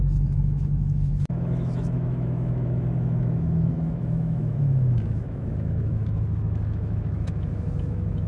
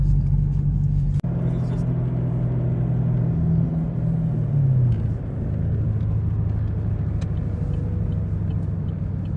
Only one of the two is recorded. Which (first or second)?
second